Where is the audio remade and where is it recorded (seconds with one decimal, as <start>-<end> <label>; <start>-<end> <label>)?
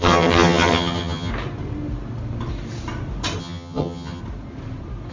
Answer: 0.0-1.3 remade; 1.3-3.4 recorded; 3.4-4.2 remade; 4.2-5.1 recorded